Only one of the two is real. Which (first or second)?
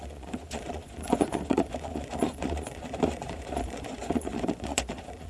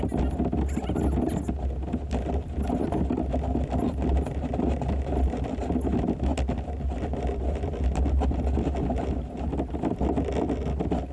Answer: second